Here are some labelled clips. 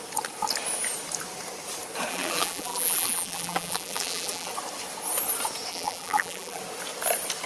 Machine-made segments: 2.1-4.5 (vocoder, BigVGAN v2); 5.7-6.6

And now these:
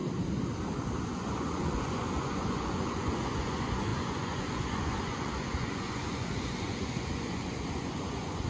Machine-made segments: 1.0-8.5 (vocoder, Vocos)